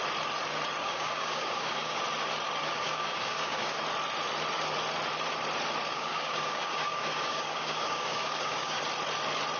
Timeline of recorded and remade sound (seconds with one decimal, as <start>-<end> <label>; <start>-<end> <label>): 0.0-0.8 recorded; 0.8-2.0 remade; 2.0-2.6 recorded; 2.6-3.8 remade; 3.8-5.9 recorded; 5.9-8.8 remade; 8.8-9.6 recorded